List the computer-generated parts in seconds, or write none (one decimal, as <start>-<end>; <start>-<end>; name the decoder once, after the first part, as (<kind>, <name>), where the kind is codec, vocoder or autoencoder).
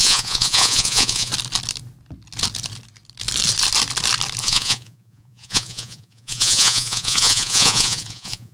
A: 0.0-1.3 (vocoder, Vocos); 4.4-8.5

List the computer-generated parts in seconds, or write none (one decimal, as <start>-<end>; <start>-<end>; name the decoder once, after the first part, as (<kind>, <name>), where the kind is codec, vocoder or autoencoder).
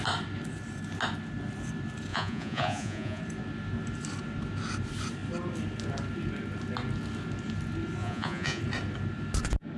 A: 2.1-3.2 (vocoder, Vocos); 8.0-8.6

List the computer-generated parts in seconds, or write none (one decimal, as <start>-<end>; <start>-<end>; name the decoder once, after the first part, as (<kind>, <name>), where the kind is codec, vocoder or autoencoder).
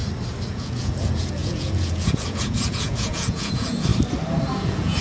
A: 0.5-3.9 (vocoder, Vocos); 4.5-5.0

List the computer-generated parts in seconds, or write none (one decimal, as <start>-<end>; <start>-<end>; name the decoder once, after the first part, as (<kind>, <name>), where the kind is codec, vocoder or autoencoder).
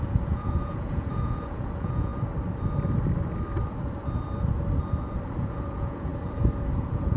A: 0.0-2.1 (vocoder, Vocos); 5.4-6.1; 6.8-7.2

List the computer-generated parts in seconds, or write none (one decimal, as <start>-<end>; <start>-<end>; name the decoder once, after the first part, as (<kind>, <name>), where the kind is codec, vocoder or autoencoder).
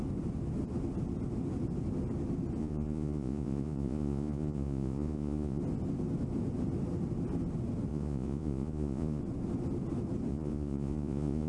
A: 2.6-5.6 (vocoder, Vocos); 7.9-9.2; 10.3-11.5